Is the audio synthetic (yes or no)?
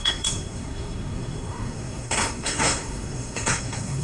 yes